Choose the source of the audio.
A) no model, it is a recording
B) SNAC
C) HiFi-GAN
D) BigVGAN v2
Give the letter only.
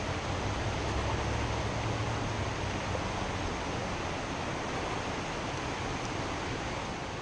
A